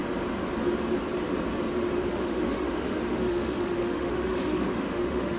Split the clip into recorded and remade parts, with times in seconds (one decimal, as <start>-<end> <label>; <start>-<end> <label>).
0.0-2.1 recorded; 2.1-5.4 remade